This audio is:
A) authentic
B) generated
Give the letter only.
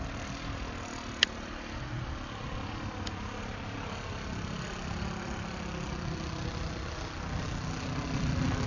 A